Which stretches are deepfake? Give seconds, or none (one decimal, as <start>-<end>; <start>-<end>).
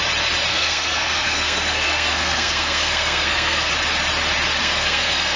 0.5-3.7; 4.6-5.4